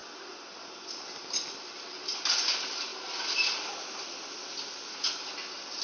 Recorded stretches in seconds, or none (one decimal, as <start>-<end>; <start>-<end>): 0.0-5.8